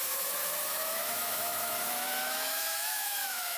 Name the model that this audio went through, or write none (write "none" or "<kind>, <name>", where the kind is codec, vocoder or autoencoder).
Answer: autoencoder, DAC-VAE